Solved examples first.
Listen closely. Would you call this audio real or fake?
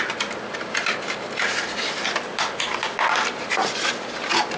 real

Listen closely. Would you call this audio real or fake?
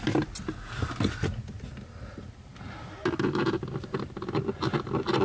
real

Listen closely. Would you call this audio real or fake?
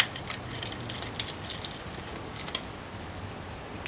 real